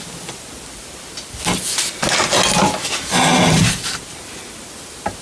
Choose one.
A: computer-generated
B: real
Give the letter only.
B